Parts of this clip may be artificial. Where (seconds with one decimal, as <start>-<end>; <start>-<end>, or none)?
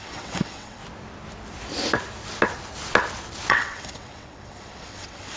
0.0-0.8; 3.5-5.4